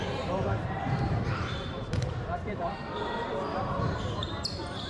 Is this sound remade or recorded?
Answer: remade